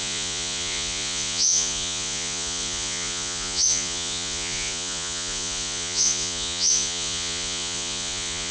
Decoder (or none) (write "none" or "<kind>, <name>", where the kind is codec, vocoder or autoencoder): vocoder, Vocos